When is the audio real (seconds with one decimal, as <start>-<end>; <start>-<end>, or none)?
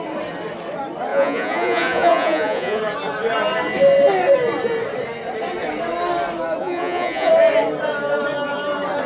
0.0-1.1; 2.8-6.6; 7.3-9.1